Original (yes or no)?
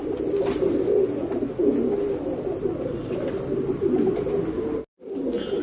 yes